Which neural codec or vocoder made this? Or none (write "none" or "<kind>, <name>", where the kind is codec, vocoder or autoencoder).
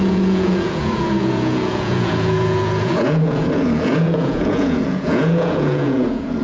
vocoder, Vocos